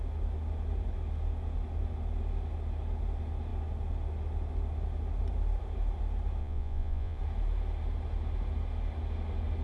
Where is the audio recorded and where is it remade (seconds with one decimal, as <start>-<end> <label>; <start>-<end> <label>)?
0.0-6.4 recorded; 6.4-7.2 remade; 7.2-9.6 recorded